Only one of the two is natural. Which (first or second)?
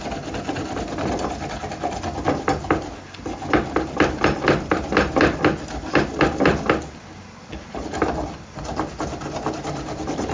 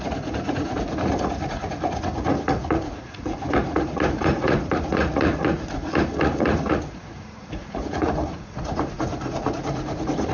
first